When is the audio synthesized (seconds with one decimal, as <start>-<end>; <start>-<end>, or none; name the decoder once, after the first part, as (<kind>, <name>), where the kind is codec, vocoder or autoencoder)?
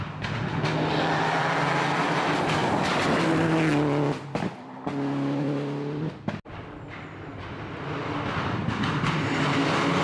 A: none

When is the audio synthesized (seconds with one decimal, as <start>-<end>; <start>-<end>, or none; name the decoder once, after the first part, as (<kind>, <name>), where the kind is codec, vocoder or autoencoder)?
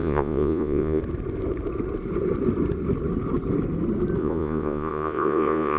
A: 0.0-1.0 (vocoder, Vocos); 4.2-5.8